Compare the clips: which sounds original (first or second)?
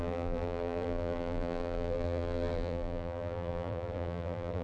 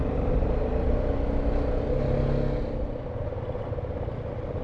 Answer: second